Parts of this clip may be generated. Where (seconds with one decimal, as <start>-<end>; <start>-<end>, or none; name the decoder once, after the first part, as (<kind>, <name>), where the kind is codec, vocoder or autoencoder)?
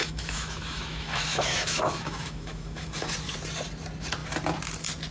0.0-3.1 (autoencoder, DAC-VAE)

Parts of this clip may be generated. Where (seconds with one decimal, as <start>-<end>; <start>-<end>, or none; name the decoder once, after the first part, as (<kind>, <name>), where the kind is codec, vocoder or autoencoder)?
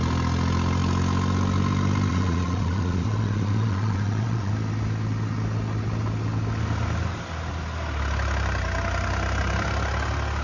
2.1-4.5 (vocoder, Vocos)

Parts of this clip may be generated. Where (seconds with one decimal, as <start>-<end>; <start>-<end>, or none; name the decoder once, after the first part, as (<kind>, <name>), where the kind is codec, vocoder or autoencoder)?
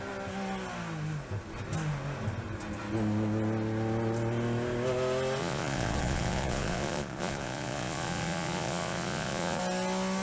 5.4-9.6 (vocoder, Vocos)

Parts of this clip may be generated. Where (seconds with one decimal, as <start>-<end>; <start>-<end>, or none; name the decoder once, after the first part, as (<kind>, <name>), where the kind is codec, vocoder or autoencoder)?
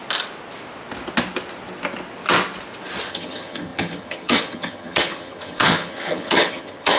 3.1-7.0 (vocoder, HiFi-GAN)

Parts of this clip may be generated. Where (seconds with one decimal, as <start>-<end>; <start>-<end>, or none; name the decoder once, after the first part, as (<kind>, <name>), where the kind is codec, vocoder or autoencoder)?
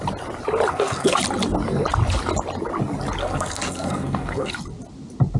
0.7-1.2 (codec, SNAC); 3.2-4.5